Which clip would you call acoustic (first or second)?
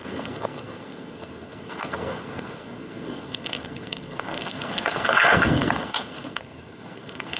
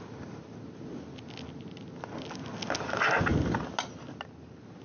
second